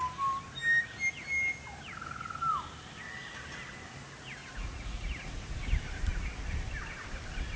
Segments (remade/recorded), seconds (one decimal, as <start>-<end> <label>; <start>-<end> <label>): 0.0-4.4 recorded; 4.4-5.3 remade; 5.3-7.6 recorded